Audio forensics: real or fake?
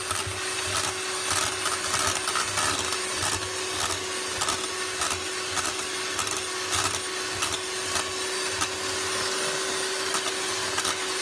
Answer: real